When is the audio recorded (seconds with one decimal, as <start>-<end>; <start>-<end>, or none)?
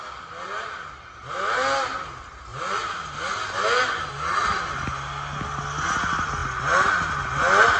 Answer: 0.0-7.8